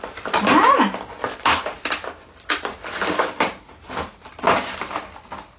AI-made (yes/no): no